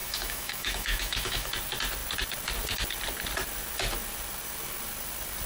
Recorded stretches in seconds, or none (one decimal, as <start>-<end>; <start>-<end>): 1.5-5.5